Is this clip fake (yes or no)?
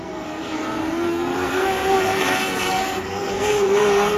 yes